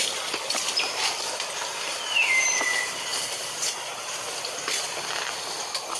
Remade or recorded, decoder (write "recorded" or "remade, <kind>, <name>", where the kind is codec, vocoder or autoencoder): recorded